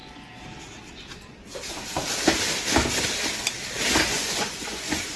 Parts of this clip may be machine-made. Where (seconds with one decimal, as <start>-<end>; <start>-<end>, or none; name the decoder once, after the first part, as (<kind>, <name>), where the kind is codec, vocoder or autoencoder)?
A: 4.1-5.2 (vocoder, Vocos)